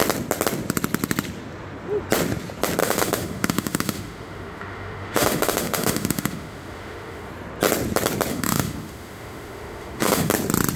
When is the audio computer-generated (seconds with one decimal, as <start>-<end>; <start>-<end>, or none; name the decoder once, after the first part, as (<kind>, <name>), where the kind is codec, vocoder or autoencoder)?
2.8-7.3 (autoencoder, DAC-VAE); 8.3-10.3